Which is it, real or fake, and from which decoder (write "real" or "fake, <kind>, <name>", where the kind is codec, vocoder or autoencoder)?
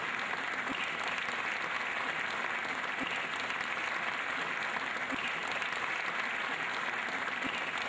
real